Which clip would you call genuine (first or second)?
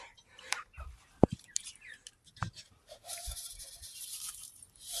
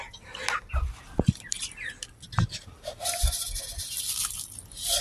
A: second